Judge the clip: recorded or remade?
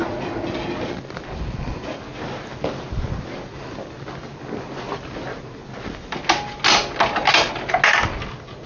recorded